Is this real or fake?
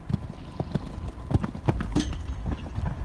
real